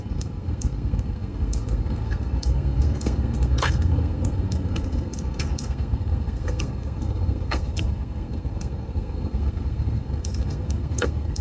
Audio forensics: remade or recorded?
remade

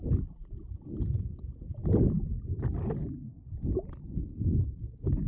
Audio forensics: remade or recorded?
recorded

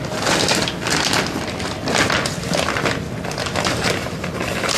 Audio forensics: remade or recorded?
recorded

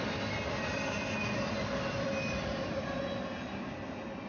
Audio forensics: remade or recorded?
recorded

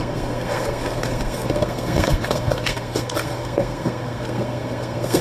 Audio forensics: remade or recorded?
remade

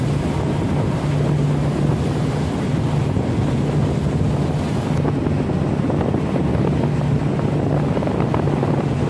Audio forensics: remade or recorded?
recorded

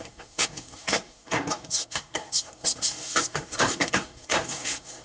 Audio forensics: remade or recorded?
remade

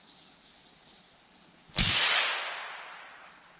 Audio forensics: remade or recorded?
recorded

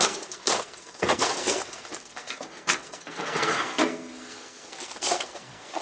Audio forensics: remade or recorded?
remade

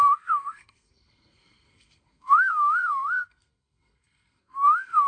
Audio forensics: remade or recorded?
remade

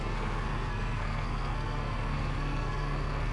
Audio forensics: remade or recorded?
remade